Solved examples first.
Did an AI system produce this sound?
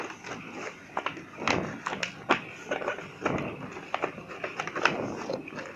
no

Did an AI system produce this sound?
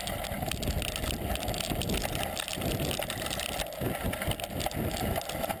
no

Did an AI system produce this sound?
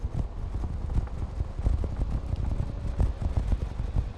no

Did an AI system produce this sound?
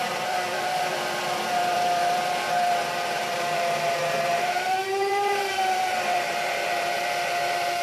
yes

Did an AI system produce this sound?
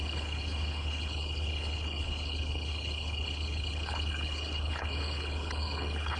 yes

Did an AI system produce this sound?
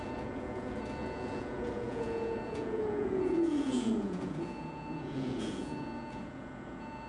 yes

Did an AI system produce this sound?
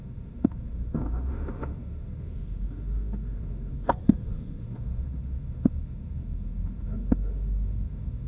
yes